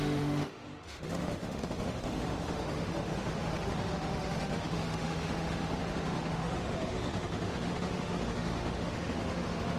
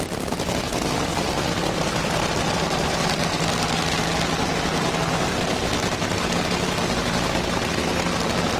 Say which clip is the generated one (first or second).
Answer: first